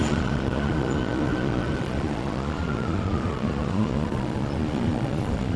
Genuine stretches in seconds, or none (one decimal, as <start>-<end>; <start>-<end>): none